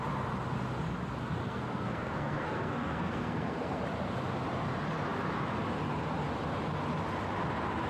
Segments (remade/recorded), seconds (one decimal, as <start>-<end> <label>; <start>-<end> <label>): 0.0-1.4 recorded; 1.4-3.8 remade; 3.8-7.9 recorded